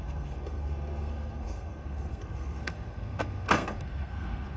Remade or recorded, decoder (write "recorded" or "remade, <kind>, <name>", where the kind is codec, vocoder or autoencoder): remade, codec, SNAC